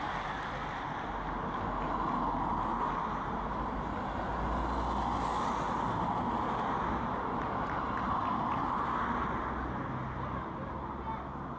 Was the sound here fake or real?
real